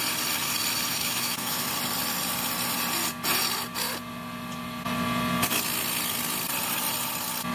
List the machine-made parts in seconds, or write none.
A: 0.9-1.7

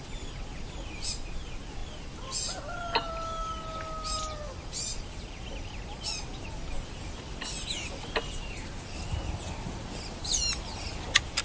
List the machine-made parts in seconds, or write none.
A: none